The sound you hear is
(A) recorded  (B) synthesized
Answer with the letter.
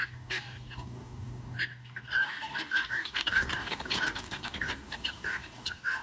B